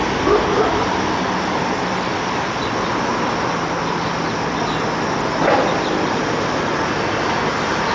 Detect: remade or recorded recorded